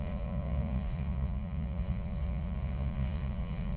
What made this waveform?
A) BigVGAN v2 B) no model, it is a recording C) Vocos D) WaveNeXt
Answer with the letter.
C